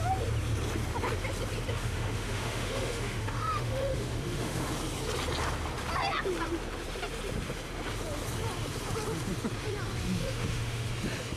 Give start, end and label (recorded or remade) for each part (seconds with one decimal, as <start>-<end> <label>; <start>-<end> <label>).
0.0-1.7 recorded; 1.7-4.7 remade; 4.7-10.2 recorded; 10.2-10.9 remade; 10.9-11.4 recorded